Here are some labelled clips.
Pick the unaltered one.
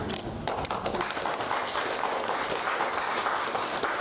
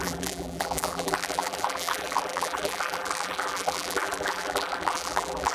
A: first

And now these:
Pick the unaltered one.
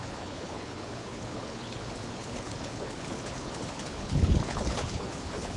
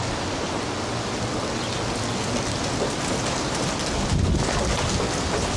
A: second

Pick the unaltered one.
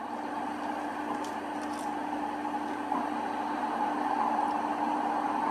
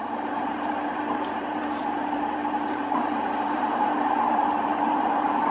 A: first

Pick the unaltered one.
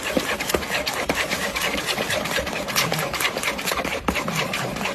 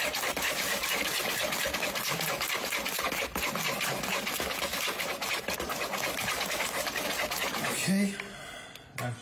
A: second